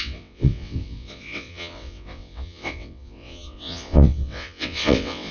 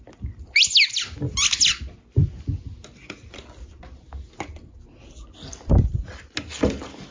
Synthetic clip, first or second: first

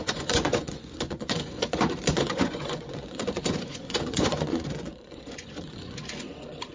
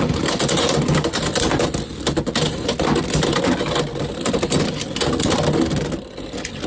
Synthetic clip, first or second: first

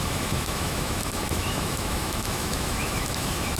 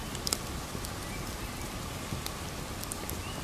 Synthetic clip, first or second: first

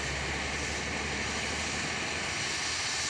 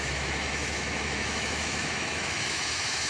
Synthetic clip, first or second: second